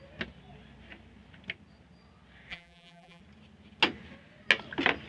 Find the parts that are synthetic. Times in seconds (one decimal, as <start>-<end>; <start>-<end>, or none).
2.5-3.2